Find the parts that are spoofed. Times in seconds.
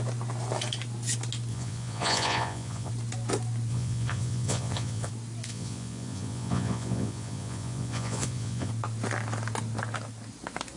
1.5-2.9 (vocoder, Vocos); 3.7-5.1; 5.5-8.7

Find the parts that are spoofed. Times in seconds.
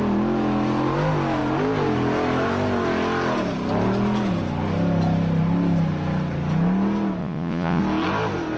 7.2-7.8 (vocoder, Vocos)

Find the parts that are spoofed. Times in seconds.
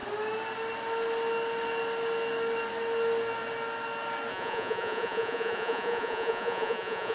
4.3-7.1 (vocoder, Vocos)